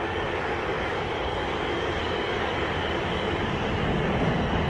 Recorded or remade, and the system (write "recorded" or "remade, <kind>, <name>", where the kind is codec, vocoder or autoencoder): remade, codec, DAC